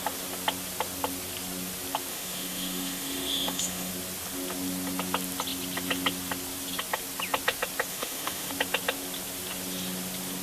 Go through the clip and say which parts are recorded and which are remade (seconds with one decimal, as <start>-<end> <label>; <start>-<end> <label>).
0.0-2.1 recorded; 2.1-3.9 remade; 3.9-7.9 recorded; 7.9-8.5 remade; 8.5-10.4 recorded